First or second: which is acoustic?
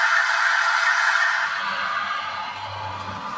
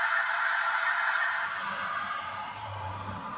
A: first